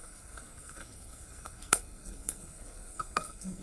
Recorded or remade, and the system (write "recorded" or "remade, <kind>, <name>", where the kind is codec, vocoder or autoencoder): remade, codec, SNAC